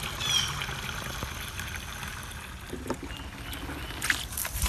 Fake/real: real